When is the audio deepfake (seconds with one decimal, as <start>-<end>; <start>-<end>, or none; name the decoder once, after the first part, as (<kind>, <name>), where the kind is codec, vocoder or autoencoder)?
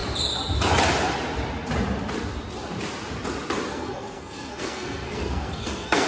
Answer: 3.7-6.1 (codec, SNAC)